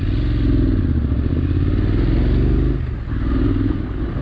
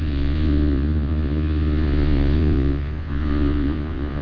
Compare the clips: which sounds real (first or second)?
first